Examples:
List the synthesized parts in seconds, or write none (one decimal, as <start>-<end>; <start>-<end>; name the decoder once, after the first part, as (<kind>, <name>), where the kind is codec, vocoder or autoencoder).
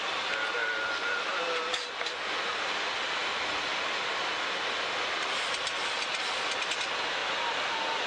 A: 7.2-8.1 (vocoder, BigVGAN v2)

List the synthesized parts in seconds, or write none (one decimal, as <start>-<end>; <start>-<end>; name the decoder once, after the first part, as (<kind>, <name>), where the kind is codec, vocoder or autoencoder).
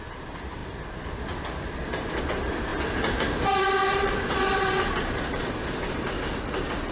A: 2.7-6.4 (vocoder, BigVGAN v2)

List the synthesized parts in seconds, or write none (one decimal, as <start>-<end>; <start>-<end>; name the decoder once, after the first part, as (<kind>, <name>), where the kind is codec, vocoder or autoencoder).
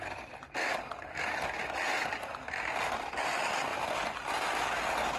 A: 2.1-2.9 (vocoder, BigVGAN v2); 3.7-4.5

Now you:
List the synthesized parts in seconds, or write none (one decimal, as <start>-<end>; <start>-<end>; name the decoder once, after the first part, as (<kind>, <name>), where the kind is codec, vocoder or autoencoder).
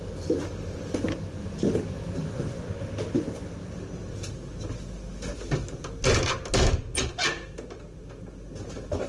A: 1.4-2.4 (vocoder, BigVGAN v2); 3.6-4.6; 5.3-5.8